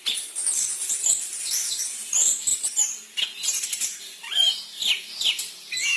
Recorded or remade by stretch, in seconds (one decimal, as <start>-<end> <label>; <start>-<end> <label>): 0.0-0.5 remade; 0.5-1.4 recorded; 1.4-4.8 remade; 4.8-6.0 recorded